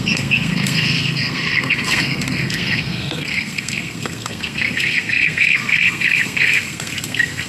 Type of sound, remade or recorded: remade